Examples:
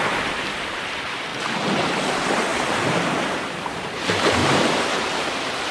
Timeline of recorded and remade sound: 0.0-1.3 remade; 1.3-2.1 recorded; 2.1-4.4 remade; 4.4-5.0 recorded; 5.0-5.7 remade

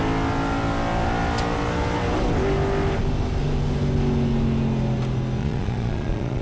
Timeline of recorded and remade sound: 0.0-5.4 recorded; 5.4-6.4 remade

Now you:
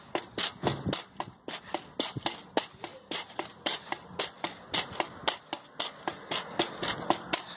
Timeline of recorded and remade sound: 0.0-2.9 recorded; 2.9-4.2 remade; 4.2-7.6 recorded

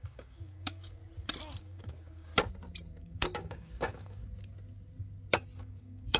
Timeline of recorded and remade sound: 0.0-1.0 remade; 1.0-1.6 recorded; 1.6-2.3 remade; 2.3-2.9 recorded; 2.9-4.2 remade; 4.2-5.6 recorded; 5.6-6.2 remade

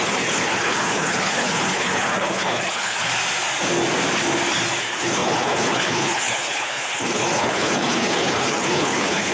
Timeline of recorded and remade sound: 0.0-3.1 remade; 3.1-4.8 recorded; 4.8-9.3 remade

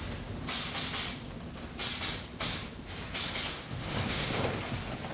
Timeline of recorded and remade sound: 0.0-3.5 recorded; 3.5-4.4 remade; 4.4-5.1 recorded